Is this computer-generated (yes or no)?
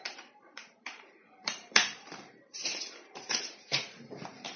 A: yes